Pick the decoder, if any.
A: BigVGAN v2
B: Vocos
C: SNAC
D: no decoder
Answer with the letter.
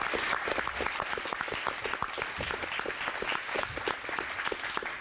D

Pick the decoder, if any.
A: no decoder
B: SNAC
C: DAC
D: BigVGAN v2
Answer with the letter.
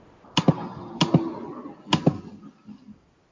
A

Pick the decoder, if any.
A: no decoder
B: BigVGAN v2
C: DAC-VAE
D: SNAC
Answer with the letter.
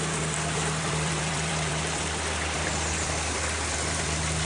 B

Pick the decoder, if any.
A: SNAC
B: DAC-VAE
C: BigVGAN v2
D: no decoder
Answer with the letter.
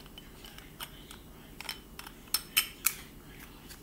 D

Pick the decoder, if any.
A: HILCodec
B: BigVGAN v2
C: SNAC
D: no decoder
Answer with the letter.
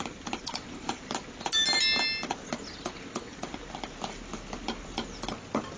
D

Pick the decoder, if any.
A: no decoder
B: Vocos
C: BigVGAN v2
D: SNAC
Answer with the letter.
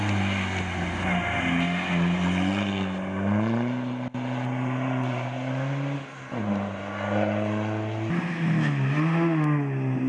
A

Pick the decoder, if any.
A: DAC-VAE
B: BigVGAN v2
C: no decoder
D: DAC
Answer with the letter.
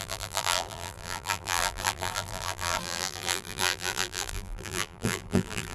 B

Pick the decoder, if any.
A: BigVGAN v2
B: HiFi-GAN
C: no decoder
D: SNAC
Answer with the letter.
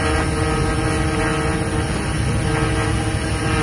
C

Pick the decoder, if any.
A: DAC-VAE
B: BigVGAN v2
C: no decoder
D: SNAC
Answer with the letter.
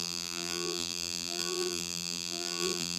B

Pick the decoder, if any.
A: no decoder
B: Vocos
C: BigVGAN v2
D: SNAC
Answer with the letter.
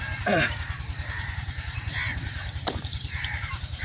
C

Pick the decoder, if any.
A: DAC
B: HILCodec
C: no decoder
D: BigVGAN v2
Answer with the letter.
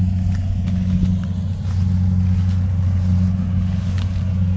C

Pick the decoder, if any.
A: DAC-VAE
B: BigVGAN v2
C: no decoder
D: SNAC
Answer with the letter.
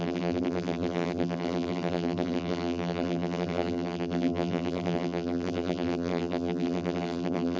B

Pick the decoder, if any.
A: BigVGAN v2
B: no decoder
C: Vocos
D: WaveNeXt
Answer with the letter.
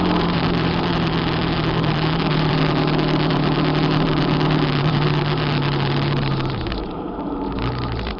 A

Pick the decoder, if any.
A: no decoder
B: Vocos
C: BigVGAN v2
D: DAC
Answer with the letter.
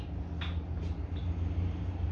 A